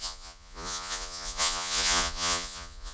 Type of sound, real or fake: fake